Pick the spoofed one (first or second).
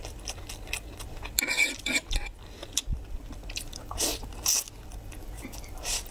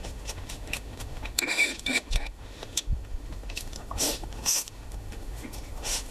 second